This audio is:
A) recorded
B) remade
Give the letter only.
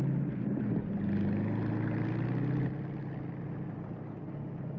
A